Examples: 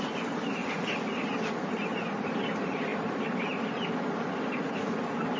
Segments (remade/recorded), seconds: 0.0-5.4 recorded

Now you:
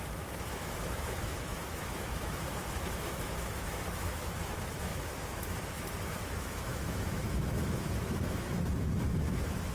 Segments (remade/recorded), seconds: 0.0-9.7 remade

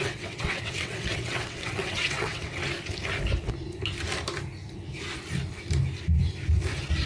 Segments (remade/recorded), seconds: 0.0-2.6 remade; 2.6-7.1 recorded

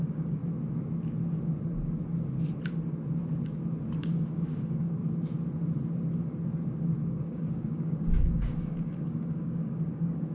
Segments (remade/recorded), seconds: 0.0-0.4 remade; 0.4-4.0 recorded; 4.0-5.0 remade; 5.0-7.0 recorded; 7.0-10.3 remade